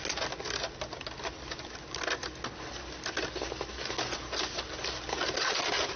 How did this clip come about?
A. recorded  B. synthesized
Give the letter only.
A